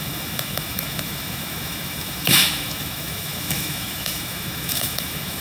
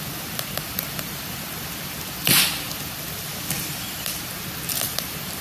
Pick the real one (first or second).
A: second